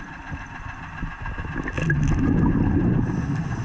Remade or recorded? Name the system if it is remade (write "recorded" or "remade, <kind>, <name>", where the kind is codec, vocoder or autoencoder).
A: recorded